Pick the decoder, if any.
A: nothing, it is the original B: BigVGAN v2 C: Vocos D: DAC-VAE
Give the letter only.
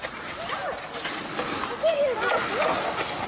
A